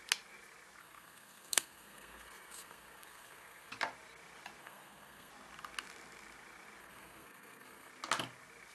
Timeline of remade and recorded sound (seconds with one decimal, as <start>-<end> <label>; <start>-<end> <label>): 0.0-0.8 recorded; 0.8-3.7 remade; 3.7-4.6 recorded; 4.6-5.3 remade; 5.3-6.8 recorded; 6.8-7.9 remade; 7.9-8.7 recorded